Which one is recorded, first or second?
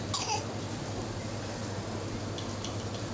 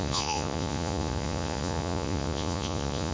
first